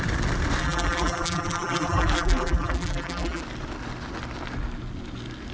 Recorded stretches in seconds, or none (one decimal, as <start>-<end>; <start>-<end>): 0.0-0.6; 3.4-5.5